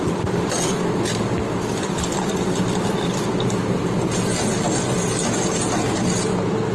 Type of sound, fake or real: real